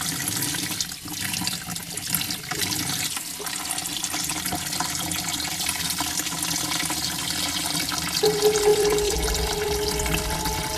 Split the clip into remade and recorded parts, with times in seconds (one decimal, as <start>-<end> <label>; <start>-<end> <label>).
0.0-3.8 recorded; 3.8-5.8 remade; 5.8-8.7 recorded; 8.7-10.2 remade; 10.2-10.8 recorded

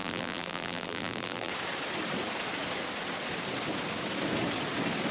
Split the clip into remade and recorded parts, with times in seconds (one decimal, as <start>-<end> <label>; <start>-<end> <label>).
0.0-1.5 remade; 1.5-5.1 recorded

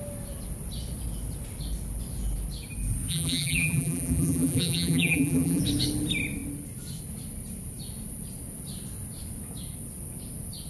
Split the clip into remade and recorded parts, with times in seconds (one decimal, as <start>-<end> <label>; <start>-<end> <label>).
0.0-3.1 recorded; 3.1-5.6 remade; 5.6-10.7 recorded

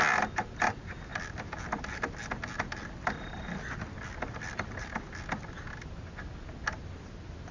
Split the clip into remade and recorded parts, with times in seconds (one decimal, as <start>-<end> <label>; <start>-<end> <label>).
0.0-7.5 recorded